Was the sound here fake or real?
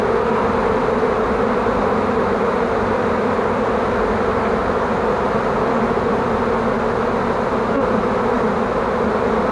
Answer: real